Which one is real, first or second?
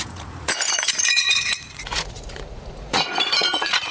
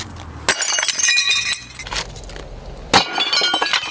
second